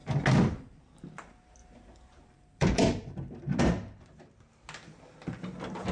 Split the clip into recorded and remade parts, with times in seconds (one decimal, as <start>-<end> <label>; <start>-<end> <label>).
0.0-1.6 recorded; 1.6-3.6 remade; 3.6-5.9 recorded